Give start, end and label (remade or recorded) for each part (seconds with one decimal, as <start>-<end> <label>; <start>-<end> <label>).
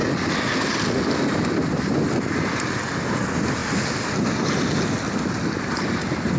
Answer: 0.0-6.4 recorded